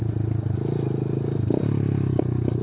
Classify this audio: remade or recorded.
recorded